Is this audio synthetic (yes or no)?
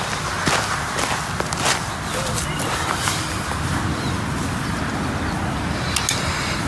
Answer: no